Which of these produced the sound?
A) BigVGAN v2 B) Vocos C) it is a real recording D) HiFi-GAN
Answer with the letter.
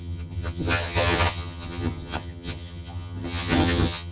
D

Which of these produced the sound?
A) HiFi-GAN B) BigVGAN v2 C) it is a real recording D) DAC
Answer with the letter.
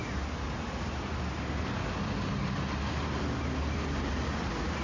C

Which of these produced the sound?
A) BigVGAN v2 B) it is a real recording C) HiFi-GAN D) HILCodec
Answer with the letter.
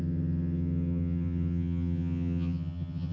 C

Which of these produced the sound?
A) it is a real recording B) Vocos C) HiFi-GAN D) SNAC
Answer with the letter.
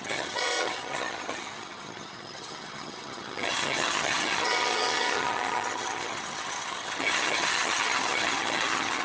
C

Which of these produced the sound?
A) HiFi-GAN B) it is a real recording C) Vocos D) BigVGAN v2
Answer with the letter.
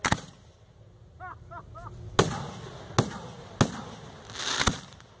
B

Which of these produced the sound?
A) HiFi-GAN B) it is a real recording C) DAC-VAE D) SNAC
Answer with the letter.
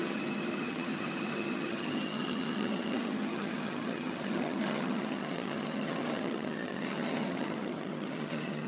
A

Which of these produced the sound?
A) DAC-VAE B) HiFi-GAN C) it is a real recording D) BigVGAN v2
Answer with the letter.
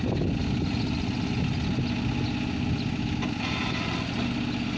C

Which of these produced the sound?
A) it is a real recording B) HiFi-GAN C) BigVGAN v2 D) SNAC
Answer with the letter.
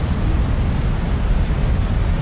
A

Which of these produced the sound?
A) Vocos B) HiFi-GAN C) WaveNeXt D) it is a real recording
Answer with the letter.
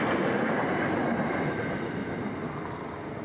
D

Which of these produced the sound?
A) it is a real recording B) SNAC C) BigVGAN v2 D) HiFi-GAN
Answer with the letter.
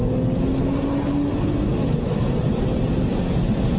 A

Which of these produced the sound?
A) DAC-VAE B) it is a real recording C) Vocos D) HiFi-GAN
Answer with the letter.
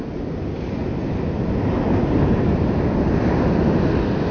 B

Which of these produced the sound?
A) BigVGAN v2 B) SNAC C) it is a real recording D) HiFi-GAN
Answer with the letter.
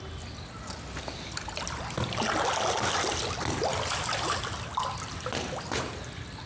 C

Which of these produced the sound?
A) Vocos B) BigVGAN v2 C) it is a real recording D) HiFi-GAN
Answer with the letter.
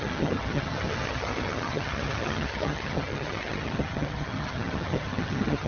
D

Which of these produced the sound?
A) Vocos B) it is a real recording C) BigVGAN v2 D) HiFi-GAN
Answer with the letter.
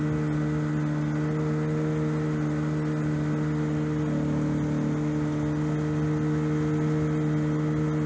B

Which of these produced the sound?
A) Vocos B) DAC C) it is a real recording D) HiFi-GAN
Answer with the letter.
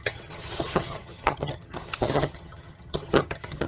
D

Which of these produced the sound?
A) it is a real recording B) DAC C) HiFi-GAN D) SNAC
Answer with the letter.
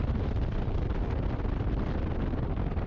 A